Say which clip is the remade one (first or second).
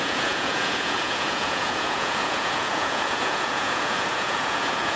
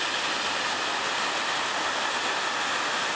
first